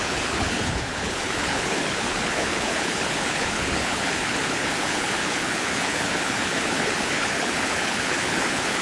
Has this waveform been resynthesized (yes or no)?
yes